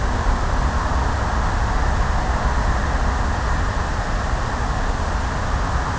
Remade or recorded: recorded